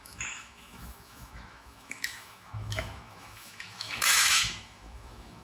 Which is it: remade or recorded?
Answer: remade